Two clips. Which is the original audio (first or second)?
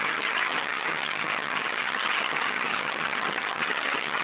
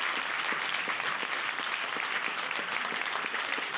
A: second